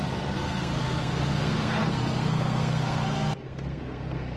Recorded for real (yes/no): no